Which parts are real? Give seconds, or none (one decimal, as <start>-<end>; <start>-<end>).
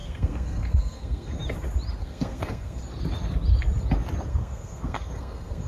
1.4-2.0; 2.8-4.3